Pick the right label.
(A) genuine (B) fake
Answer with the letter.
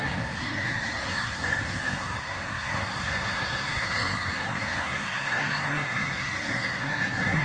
B